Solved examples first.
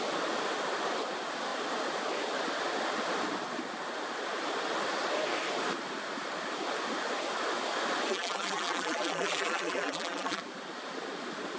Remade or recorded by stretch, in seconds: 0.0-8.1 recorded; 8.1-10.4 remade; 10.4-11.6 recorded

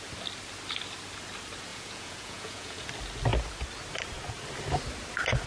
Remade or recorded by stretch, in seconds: 0.0-1.7 recorded; 1.7-2.9 remade; 2.9-5.5 recorded

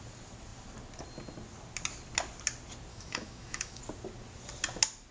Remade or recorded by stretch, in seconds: 0.0-2.9 recorded; 2.9-3.8 remade; 3.8-5.1 recorded

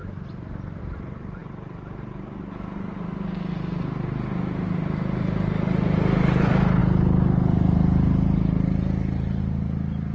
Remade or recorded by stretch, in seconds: 0.0-10.1 recorded

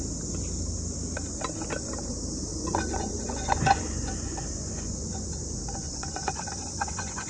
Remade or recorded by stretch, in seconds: 0.0-2.5 recorded; 2.5-7.3 remade

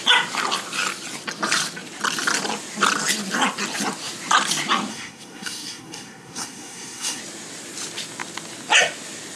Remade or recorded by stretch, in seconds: 0.0-4.9 recorded; 4.9-7.2 remade; 7.2-9.4 recorded

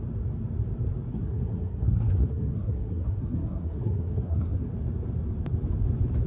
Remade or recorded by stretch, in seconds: 0.0-1.1 recorded; 1.1-4.7 remade; 4.7-6.3 recorded

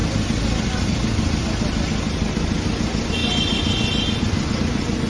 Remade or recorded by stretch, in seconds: 0.0-5.1 recorded